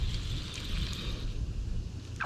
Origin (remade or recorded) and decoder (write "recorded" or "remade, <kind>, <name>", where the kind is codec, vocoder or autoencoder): recorded